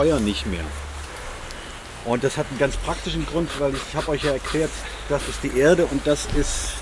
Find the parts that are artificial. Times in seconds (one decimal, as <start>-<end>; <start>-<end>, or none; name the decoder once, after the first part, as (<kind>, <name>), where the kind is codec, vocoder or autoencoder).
none

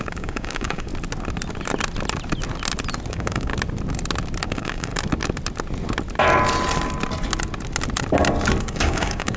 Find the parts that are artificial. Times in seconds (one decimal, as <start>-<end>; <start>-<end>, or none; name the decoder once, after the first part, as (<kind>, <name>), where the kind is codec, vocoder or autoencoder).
0.0-0.9 (codec, DAC); 3.1-3.5; 4.4-4.9; 8.6-9.4

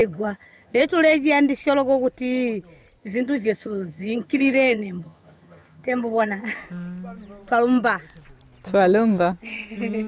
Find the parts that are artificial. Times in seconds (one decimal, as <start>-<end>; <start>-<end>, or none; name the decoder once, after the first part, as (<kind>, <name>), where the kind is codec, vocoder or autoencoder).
0.0-0.8 (vocoder, HiFi-GAN); 3.0-6.6

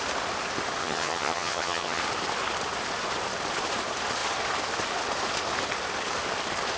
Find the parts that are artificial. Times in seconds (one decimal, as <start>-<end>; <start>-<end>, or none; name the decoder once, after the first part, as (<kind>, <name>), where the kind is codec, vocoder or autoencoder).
0.8-2.0 (vocoder, HiFi-GAN)

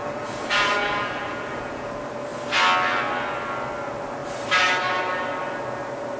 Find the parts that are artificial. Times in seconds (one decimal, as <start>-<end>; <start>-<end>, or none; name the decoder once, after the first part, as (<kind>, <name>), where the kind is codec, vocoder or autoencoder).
0.0-1.9 (vocoder, Vocos)

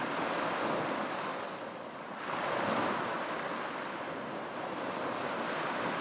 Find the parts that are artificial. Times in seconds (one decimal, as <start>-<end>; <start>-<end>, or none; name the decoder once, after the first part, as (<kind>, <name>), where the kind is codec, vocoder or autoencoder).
none

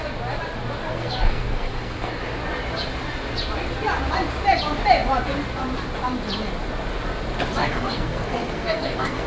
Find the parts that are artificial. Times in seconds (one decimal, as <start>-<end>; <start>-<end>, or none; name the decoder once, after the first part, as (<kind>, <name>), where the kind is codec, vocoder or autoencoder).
0.9-2.2 (codec, SNAC); 7.6-9.3

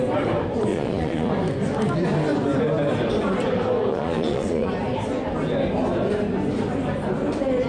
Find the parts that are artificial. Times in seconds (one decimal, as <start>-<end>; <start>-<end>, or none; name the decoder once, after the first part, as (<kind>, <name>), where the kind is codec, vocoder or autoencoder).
0.7-1.3 (vocoder, Vocos); 3.9-4.7